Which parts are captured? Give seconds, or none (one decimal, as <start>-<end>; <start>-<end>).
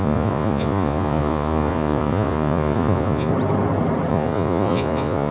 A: 3.3-4.1